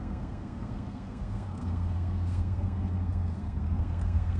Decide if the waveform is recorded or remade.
remade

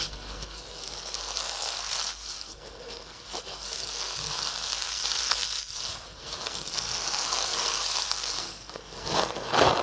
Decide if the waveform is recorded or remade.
remade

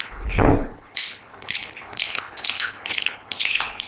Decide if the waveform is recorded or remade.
remade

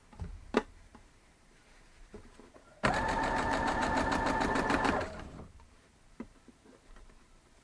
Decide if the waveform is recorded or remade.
remade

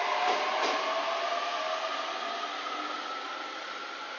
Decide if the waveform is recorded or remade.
recorded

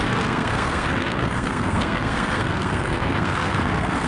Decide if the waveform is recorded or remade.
remade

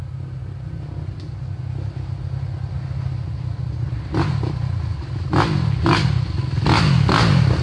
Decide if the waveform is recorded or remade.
recorded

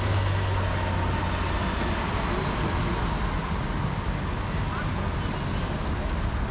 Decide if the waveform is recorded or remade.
recorded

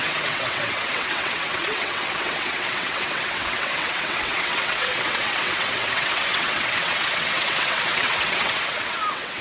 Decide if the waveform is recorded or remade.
remade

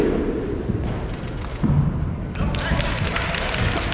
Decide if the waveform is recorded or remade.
recorded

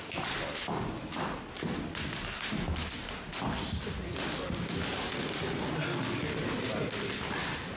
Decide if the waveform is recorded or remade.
recorded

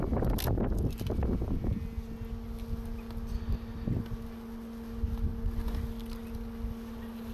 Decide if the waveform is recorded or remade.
recorded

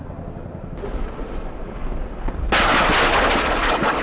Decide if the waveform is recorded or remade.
recorded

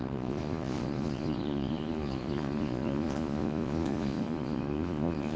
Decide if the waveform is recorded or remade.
remade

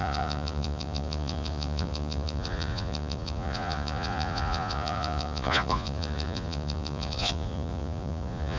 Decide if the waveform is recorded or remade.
remade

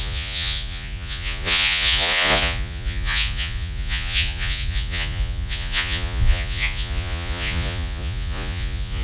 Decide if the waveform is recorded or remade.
remade